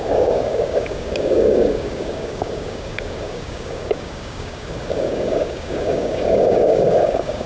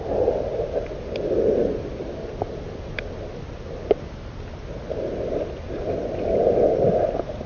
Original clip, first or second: second